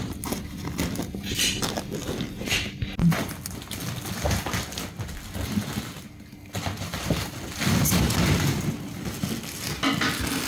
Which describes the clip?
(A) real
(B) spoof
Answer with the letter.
A